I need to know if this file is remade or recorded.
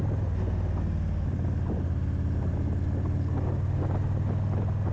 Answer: recorded